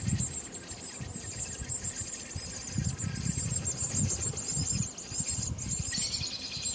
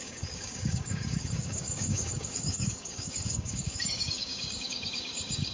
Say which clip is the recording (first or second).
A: first